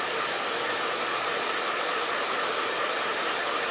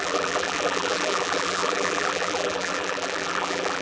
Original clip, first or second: first